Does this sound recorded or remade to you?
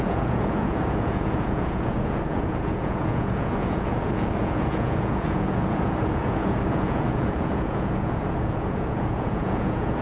remade